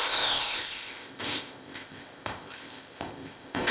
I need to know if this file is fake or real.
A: fake